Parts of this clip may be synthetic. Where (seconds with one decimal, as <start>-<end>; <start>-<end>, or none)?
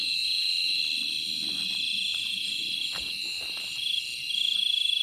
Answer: 0.0-0.8; 2.1-3.7